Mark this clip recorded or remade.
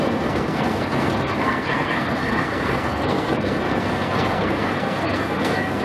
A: remade